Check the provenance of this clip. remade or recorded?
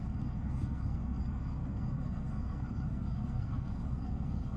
remade